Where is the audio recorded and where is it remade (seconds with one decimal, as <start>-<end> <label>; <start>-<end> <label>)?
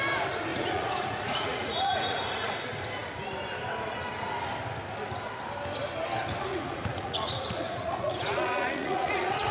0.0-0.5 recorded; 0.5-2.5 remade; 2.5-6.5 recorded; 6.5-9.5 remade